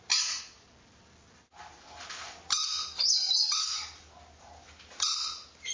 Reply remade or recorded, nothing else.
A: recorded